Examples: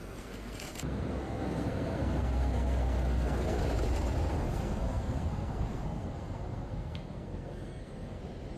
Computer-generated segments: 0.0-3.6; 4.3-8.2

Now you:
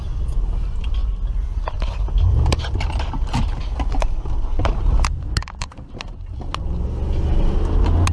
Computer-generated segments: none